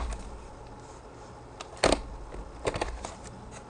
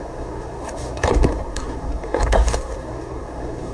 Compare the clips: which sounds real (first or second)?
first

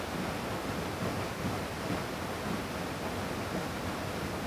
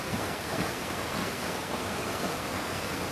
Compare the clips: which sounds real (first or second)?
first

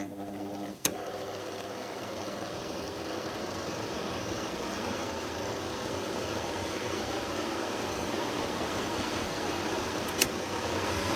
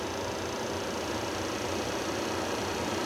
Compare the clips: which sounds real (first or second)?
second